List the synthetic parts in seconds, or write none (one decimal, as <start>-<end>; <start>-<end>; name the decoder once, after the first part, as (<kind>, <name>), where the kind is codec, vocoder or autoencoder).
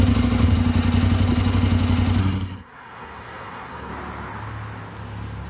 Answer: 2.2-3.9 (codec, SNAC)